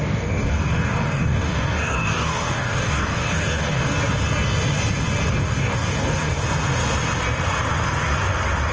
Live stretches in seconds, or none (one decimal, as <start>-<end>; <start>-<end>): 3.9-5.3; 6.3-8.7